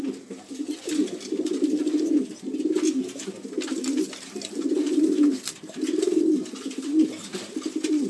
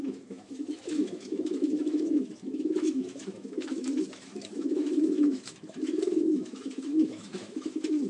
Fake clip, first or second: second